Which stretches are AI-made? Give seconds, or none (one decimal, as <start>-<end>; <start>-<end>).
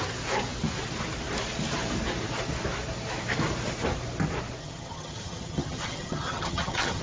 4.6-7.0